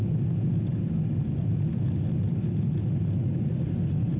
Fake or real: real